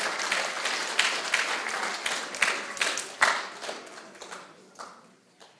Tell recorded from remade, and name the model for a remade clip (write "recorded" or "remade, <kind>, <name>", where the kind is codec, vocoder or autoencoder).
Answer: recorded